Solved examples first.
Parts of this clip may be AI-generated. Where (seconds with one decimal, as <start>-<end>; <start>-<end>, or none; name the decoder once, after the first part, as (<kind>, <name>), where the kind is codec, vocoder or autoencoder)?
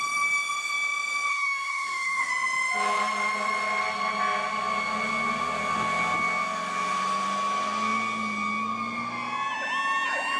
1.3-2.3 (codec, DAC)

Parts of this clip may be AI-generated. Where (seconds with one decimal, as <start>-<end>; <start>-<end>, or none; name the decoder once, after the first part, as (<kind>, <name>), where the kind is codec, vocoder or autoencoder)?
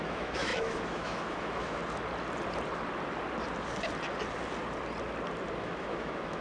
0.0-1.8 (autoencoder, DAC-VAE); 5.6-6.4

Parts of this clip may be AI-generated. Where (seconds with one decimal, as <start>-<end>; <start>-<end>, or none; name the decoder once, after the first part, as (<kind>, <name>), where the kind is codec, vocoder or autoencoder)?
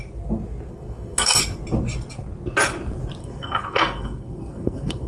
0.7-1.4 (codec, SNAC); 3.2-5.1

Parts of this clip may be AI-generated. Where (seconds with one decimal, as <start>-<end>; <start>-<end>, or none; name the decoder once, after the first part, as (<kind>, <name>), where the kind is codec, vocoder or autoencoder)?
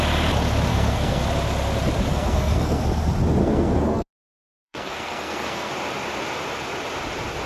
0.7-1.2 (codec, SNAC); 2.1-2.8; 3.4-5.7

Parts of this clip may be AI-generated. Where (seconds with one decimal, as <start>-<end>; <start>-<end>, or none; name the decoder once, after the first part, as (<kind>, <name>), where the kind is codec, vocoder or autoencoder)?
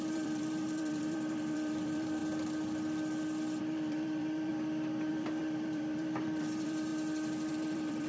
0.0-2.2 (vocoder, BigVGAN v2); 3.6-4.5; 5.1-6.9; 7.5-8.1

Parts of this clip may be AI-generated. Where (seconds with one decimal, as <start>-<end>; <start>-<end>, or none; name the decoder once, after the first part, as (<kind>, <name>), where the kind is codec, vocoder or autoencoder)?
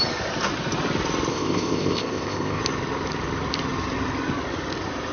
1.3-2.6 (codec, ZipCodec)